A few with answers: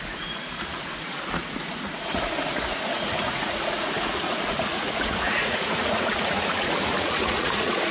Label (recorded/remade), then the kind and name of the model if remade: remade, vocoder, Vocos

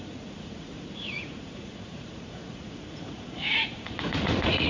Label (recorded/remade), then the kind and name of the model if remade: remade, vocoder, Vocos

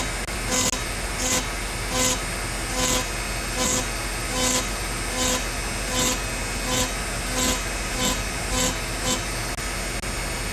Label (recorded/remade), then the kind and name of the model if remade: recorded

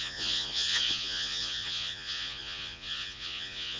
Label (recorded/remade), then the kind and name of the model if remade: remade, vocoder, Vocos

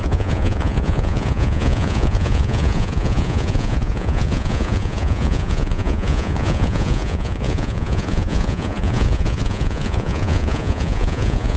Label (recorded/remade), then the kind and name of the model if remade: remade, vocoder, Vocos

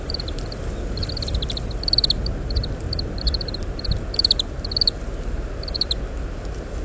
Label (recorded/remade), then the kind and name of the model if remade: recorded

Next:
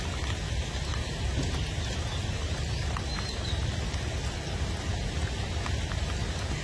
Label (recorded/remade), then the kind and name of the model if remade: recorded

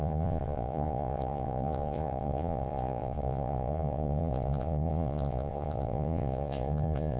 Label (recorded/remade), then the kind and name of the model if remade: remade, vocoder, Vocos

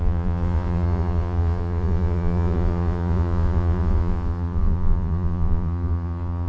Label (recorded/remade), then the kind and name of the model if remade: remade, vocoder, Vocos